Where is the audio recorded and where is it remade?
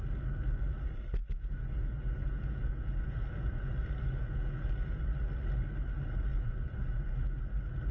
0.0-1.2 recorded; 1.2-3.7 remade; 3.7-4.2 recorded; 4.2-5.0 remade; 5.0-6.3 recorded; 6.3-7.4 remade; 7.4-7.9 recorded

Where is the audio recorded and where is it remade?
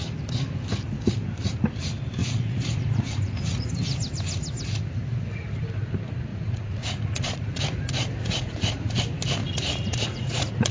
0.0-2.2 recorded; 2.2-3.7 remade; 3.7-6.3 recorded; 6.3-7.6 remade; 7.6-8.2 recorded; 8.2-9.0 remade; 9.0-9.4 recorded; 9.4-10.7 remade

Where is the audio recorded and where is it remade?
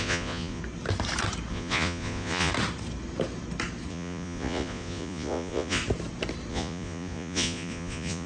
0.0-0.6 remade; 0.6-1.5 recorded; 1.5-2.5 remade; 2.5-3.9 recorded; 3.9-5.8 remade; 5.8-6.5 recorded; 6.5-8.3 remade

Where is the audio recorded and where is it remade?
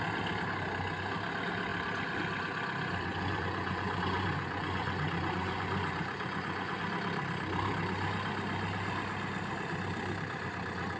0.0-3.1 recorded; 3.1-6.8 remade; 6.8-11.0 recorded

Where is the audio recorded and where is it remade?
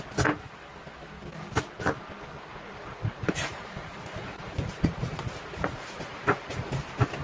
0.0-2.5 recorded; 2.5-6.8 remade; 6.8-7.2 recorded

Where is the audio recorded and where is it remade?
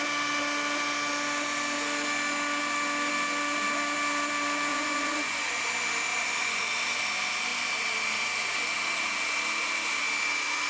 0.0-4.7 recorded; 4.7-5.6 remade; 5.6-6.1 recorded; 6.1-6.6 remade; 6.6-10.7 recorded